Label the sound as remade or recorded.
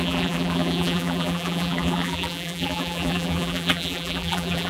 remade